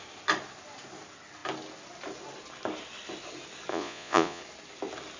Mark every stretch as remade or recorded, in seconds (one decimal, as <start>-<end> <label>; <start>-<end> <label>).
0.0-3.7 recorded; 3.7-4.4 remade; 4.4-5.2 recorded